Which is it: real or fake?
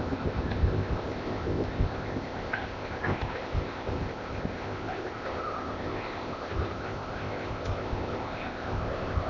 fake